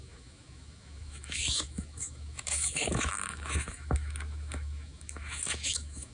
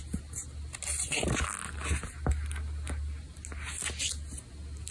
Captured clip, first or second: second